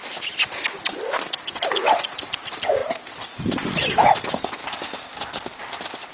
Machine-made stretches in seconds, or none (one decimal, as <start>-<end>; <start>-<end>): none